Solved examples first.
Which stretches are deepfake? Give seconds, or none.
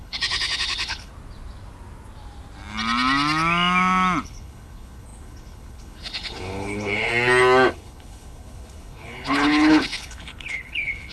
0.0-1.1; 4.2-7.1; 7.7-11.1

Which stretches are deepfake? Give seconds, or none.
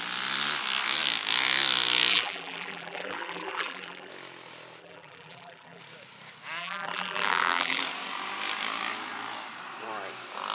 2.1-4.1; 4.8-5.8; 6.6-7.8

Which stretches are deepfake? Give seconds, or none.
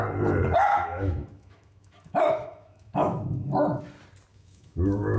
0.7-3.8; 4.3-5.2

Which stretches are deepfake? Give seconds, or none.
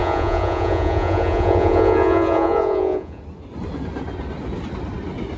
0.0-3.2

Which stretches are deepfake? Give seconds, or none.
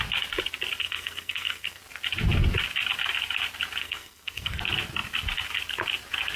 0.8-1.8; 3.8-4.6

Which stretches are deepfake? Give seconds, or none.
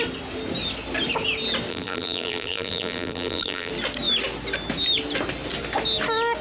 1.7-3.7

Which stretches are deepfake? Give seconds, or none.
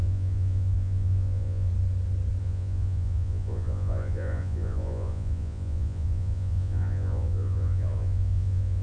0.0-1.7; 2.4-8.8